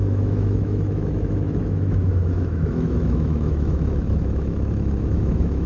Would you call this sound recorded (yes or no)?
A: no